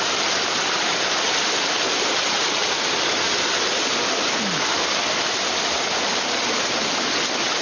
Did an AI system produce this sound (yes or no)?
no